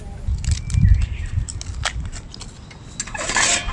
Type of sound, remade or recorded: recorded